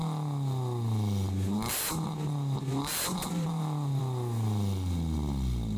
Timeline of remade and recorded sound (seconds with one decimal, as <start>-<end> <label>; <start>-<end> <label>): 0.0-3.2 recorded; 3.2-4.0 remade; 4.0-5.8 recorded